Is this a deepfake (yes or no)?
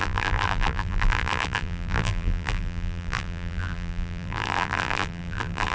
yes